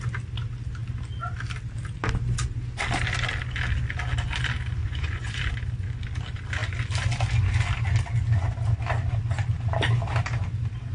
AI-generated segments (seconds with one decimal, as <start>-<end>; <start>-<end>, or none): 4.8-5.4